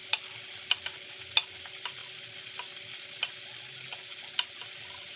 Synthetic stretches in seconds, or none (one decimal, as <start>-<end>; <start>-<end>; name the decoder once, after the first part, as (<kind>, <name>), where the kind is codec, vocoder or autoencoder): none